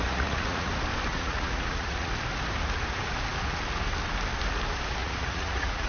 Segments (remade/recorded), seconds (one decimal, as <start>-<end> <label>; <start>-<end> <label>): 0.0-0.7 remade; 0.7-1.1 recorded; 1.1-2.1 remade; 2.1-5.0 recorded; 5.0-5.9 remade